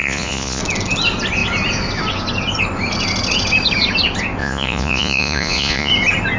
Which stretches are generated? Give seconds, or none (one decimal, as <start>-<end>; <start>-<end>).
0.0-0.6; 4.4-5.9

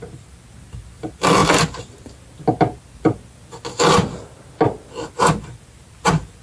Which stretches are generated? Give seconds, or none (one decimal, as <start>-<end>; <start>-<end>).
none

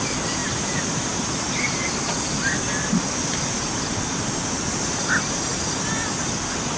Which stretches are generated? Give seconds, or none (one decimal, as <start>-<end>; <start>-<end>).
0.4-1.9

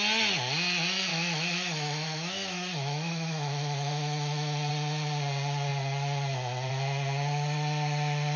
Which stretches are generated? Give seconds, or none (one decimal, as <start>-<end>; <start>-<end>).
1.1-4.7

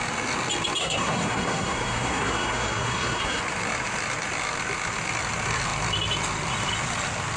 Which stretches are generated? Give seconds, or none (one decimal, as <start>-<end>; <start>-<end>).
0.8-3.4

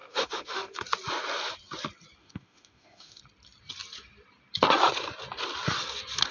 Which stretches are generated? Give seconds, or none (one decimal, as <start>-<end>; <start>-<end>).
0.0-0.8; 2.2-3.2

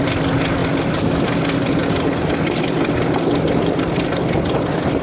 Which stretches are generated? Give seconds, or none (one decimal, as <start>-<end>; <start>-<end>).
none

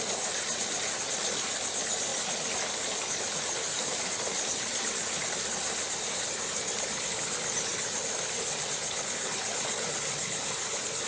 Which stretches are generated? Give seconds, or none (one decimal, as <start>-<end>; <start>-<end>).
none